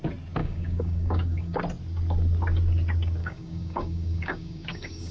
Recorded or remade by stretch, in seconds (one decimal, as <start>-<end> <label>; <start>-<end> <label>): 0.0-0.4 recorded; 0.4-1.6 remade; 1.6-3.2 recorded; 3.2-5.1 remade